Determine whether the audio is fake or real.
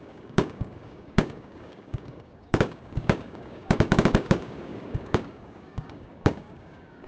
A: fake